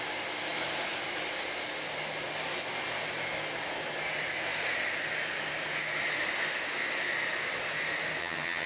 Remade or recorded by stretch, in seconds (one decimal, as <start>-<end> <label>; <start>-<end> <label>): 0.0-8.2 recorded; 8.2-8.7 remade